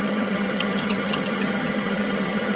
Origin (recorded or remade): remade